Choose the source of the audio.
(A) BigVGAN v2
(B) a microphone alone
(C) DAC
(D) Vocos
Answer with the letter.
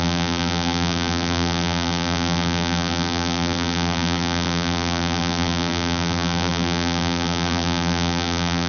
A